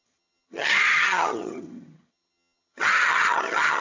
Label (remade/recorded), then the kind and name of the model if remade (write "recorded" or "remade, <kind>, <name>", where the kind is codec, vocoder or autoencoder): remade, vocoder, HiFi-GAN